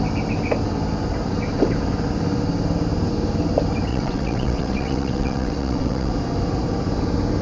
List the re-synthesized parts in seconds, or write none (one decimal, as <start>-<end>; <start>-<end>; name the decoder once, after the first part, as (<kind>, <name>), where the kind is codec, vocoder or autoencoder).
3.9-6.1 (vocoder, WaveNeXt)